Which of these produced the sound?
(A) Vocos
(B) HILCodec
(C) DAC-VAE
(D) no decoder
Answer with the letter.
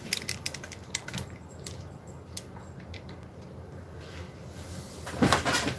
D